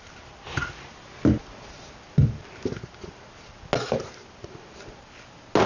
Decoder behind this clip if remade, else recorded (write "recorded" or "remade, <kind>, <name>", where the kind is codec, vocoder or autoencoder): recorded